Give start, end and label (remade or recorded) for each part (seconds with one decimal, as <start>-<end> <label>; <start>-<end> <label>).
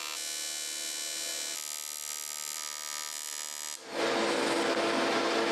0.0-5.5 recorded